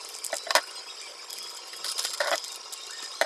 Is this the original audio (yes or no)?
yes